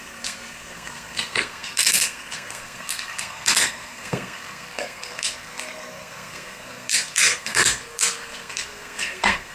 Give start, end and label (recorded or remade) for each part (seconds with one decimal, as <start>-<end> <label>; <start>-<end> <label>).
0.0-9.5 remade